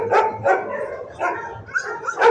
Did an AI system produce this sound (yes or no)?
no